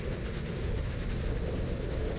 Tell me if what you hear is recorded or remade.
recorded